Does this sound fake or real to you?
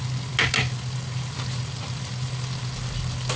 real